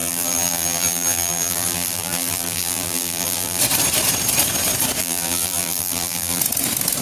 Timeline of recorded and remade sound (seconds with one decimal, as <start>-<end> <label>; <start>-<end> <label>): 0.0-3.6 remade; 3.6-5.0 recorded; 5.0-6.4 remade; 6.4-7.0 recorded